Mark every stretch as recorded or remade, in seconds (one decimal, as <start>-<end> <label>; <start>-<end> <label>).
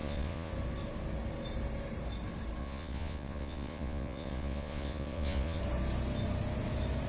0.0-0.5 remade; 0.5-2.6 recorded; 2.6-5.6 remade; 5.6-7.1 recorded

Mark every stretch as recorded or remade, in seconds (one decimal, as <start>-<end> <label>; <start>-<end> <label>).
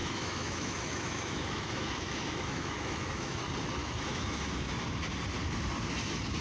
0.0-3.4 remade; 3.4-3.8 recorded; 3.8-4.7 remade; 4.7-6.4 recorded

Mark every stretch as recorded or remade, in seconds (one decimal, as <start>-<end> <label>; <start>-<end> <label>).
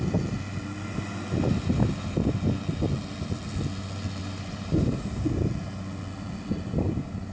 0.0-4.2 recorded; 4.2-5.0 remade; 5.0-7.3 recorded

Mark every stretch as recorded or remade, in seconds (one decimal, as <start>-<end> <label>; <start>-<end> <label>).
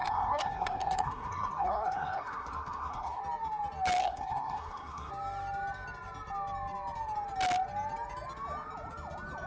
0.0-3.2 remade; 3.2-4.0 recorded; 4.0-5.1 remade; 5.1-9.5 recorded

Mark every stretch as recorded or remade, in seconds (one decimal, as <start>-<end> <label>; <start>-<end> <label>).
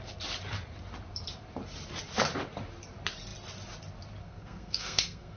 0.0-4.2 recorded; 4.2-5.4 remade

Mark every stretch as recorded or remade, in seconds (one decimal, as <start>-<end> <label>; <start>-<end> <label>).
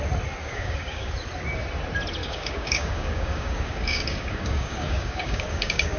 0.0-0.4 recorded; 0.4-1.1 remade; 1.1-2.2 recorded; 2.2-6.0 remade